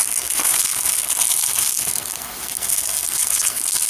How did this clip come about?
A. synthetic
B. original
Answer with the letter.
A